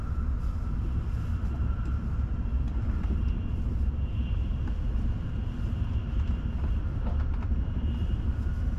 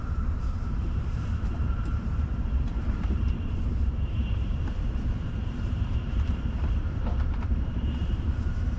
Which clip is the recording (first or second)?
first